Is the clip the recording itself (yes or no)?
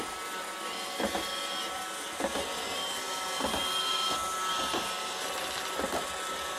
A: yes